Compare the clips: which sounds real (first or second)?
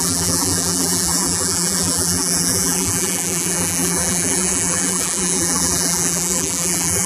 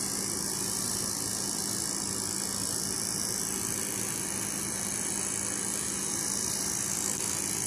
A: second